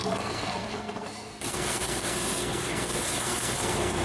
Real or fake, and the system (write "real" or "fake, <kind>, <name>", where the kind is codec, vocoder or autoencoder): fake, codec, SNAC